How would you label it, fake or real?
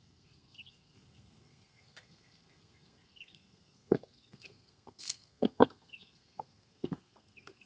fake